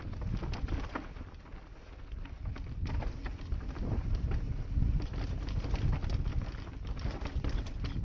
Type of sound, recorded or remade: recorded